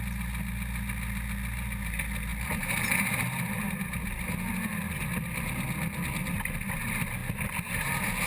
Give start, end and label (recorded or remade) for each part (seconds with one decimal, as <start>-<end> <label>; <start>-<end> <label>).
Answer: 0.0-8.3 recorded